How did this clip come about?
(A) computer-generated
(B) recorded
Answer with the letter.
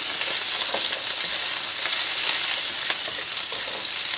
B